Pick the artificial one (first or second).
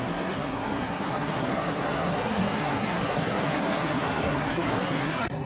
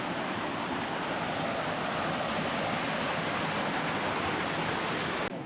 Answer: first